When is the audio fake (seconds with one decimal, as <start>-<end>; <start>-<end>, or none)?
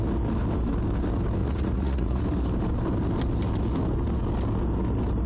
1.4-2.2